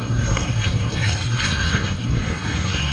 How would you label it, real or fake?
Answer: fake